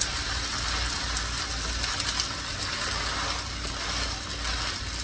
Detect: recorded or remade recorded